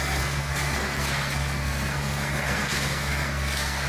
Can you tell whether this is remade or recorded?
remade